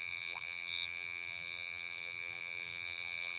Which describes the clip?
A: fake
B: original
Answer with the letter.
A